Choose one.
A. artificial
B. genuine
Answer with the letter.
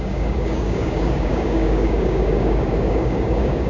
A